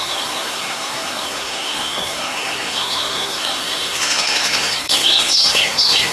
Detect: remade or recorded remade